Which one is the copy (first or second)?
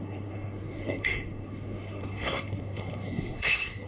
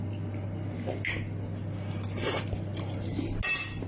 first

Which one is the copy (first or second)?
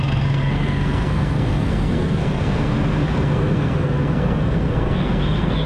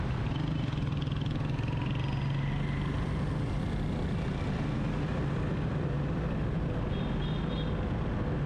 first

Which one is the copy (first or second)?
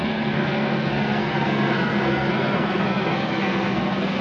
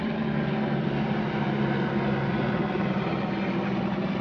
first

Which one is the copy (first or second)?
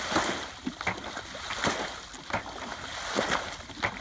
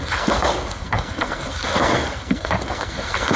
second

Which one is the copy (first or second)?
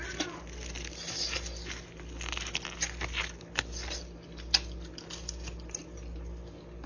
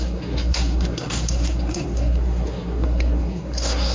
second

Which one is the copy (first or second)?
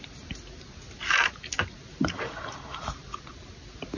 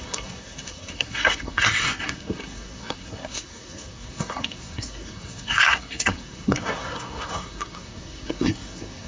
second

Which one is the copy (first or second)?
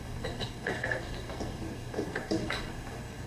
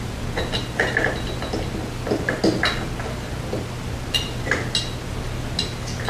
first